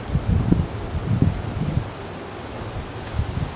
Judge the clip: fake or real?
real